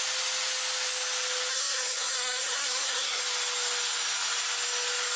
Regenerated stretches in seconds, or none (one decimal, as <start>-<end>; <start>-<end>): 1.5-3.2